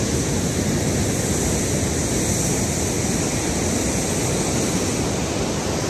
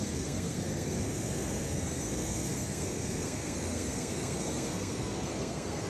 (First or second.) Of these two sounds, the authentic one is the first